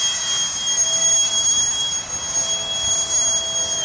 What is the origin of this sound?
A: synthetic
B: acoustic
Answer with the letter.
B